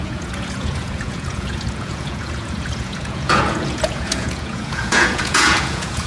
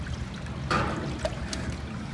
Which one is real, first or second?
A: second